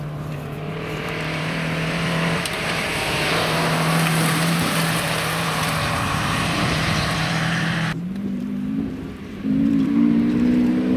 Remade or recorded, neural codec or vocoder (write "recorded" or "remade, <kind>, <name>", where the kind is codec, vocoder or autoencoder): remade, vocoder, BigVGAN v2